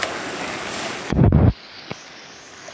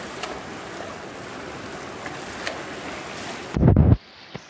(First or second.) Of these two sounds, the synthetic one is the first